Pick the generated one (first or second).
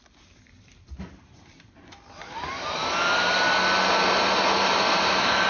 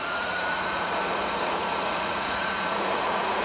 second